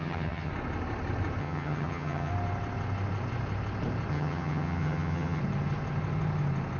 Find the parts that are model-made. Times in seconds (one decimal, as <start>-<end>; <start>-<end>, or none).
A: 0.0-0.5; 1.4-2.3; 4.1-5.4

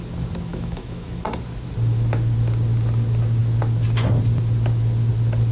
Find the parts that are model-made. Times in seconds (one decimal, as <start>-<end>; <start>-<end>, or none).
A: 0.5-1.2

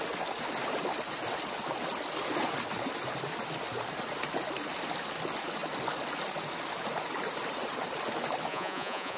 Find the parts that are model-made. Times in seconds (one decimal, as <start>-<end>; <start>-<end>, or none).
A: 8.5-9.2

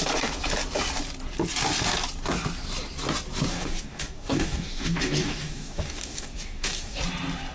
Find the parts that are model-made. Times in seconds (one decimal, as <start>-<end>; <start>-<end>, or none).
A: 3.5-7.0

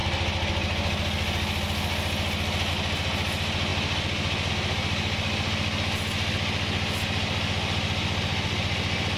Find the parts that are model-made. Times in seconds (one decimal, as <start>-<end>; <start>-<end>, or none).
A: none

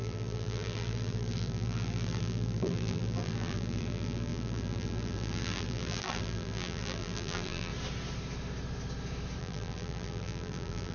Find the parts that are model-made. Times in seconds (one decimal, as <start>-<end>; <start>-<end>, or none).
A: 0.0-7.7; 9.4-10.9